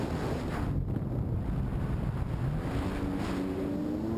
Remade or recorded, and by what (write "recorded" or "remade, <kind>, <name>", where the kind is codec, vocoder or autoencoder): recorded